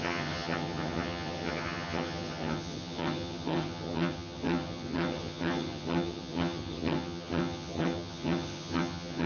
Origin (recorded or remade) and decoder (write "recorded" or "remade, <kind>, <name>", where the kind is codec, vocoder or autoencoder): remade, vocoder, HiFi-GAN